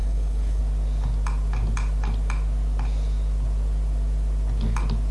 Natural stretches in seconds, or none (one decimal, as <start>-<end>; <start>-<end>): 0.6-5.1